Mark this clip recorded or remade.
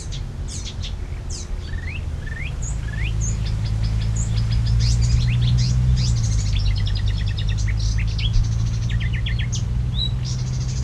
recorded